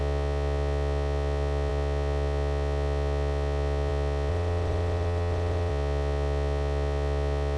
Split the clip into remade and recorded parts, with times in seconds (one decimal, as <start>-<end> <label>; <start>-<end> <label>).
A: 0.0-4.3 recorded; 4.3-5.7 remade; 5.7-7.6 recorded